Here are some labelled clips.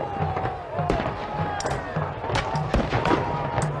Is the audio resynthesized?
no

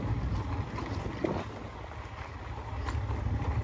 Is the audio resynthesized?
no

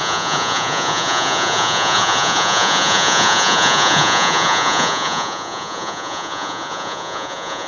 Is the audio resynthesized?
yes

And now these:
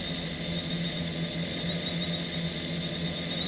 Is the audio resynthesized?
no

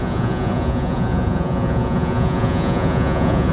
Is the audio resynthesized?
yes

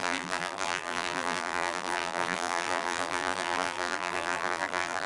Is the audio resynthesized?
yes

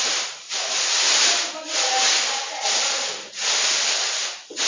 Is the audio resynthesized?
no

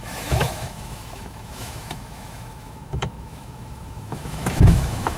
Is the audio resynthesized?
yes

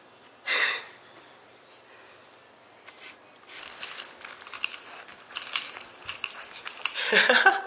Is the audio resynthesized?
no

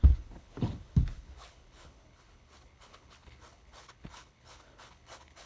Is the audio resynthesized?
yes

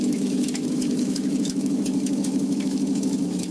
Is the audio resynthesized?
yes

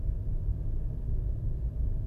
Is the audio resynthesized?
no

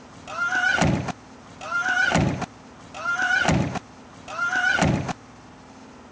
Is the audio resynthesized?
no